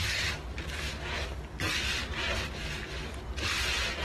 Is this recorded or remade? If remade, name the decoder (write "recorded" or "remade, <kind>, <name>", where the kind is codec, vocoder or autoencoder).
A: recorded